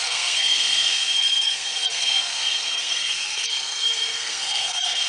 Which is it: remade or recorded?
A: remade